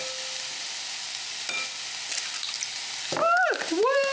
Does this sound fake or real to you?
real